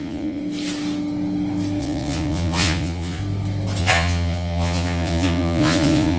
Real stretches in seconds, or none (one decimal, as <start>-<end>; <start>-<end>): 0.4-1.8; 3.2-3.8

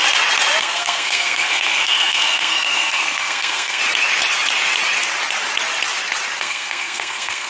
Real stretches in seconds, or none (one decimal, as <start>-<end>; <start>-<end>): 0.0-0.6; 3.8-6.4

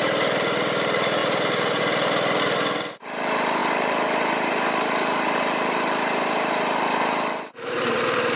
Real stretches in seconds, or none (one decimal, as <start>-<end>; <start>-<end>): none

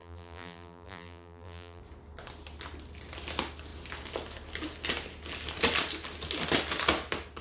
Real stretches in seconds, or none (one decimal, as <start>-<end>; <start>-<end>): 1.8-7.4